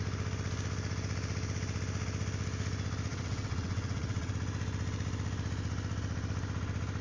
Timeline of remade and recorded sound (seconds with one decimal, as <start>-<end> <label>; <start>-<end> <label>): 0.0-3.1 recorded; 3.1-4.3 remade; 4.3-7.0 recorded